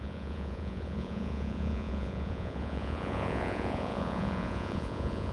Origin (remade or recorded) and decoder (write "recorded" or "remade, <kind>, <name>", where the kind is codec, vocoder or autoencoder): remade, vocoder, Vocos